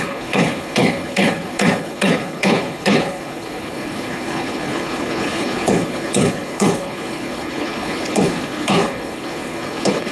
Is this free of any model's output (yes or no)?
no